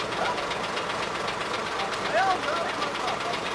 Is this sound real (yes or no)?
yes